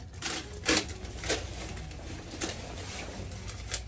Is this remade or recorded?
recorded